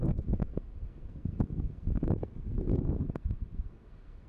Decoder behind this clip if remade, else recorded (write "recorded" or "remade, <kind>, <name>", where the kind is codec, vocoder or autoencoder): remade, codec, SNAC